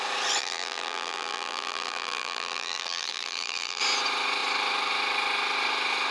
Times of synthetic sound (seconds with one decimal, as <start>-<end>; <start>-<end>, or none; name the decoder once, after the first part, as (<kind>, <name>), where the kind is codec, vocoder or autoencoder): 0.4-3.8 (vocoder, BigVGAN v2)